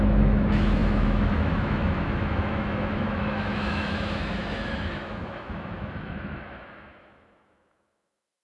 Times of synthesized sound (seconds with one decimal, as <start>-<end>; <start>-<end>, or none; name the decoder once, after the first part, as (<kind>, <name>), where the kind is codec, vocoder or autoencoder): 0.0-8.4 (autoencoder, DAC-VAE)